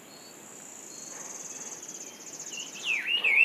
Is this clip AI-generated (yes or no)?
no